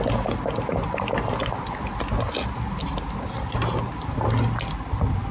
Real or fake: real